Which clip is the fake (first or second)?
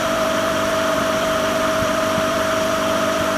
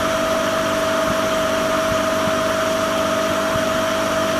first